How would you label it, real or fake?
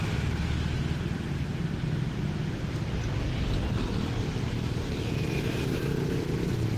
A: real